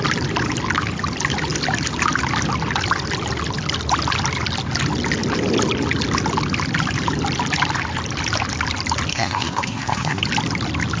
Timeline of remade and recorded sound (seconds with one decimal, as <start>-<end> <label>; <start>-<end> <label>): 0.0-9.1 recorded; 9.1-10.2 remade; 10.2-11.0 recorded